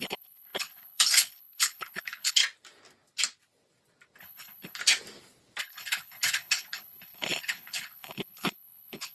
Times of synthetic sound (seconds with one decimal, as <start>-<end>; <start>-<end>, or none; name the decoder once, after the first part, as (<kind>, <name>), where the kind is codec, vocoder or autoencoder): 0.0-2.4 (codec, HILCodec); 4.2-4.8; 5.6-9.1

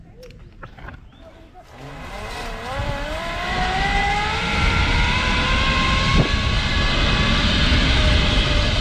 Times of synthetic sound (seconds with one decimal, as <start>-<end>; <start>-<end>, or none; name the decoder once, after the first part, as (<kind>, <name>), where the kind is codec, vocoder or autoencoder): none

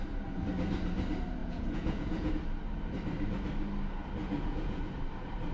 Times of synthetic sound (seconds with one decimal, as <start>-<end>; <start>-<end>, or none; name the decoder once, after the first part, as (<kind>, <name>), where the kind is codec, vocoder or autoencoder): 1.4-2.3 (vocoder, Vocos); 4.2-4.8

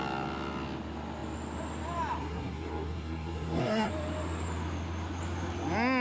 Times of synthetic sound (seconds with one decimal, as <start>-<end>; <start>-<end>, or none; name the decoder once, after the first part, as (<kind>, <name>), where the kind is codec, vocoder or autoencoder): 2.2-3.9 (codec, SNAC)

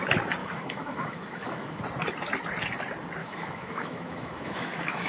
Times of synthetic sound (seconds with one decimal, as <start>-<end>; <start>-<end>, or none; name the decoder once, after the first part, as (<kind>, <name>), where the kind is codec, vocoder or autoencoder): 0.4-1.8 (autoencoder, DAC-VAE); 3.2-5.1

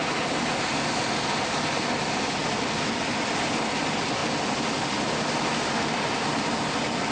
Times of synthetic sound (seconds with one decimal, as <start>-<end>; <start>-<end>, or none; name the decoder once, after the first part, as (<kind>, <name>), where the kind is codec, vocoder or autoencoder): none

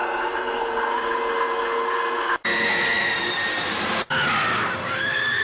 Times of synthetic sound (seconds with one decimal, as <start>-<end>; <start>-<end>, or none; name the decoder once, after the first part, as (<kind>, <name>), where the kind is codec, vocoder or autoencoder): 3.2-4.0 (vocoder, BigVGAN v2); 4.8-5.4